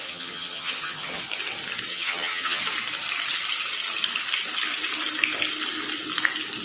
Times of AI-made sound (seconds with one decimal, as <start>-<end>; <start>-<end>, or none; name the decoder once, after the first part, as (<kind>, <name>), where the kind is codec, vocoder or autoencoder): 0.0-1.2 (vocoder, HiFi-GAN); 1.9-2.6